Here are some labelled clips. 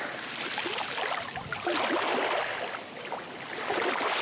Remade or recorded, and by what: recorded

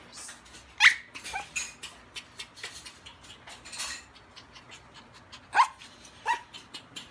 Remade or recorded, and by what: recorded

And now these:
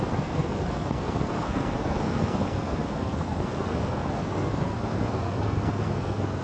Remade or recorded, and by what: remade, codec, SNAC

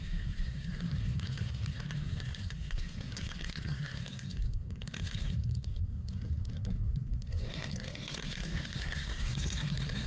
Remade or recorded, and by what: remade, codec, SNAC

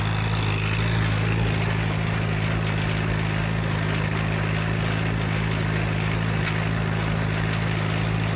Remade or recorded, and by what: recorded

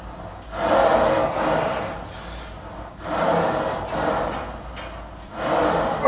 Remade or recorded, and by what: recorded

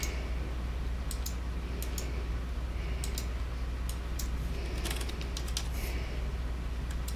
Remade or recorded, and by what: recorded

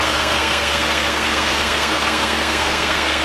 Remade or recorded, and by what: remade, codec, SNAC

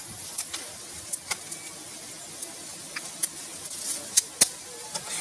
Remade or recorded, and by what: recorded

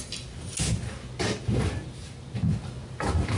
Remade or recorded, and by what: recorded